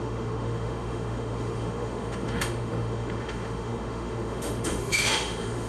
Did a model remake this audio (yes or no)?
yes